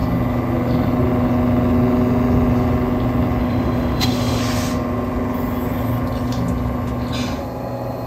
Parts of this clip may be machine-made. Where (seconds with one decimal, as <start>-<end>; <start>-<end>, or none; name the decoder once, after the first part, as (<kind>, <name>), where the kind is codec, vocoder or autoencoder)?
3.4-4.4 (autoencoder, DAC-VAE)